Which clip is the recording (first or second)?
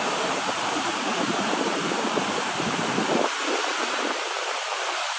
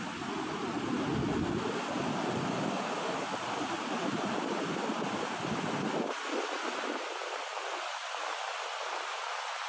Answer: second